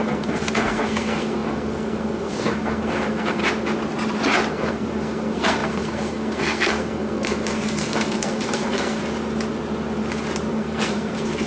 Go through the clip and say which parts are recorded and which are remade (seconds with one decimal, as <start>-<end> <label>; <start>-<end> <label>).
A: 0.0-3.4 remade; 3.4-4.5 recorded; 4.5-9.0 remade; 9.0-10.5 recorded; 10.5-11.5 remade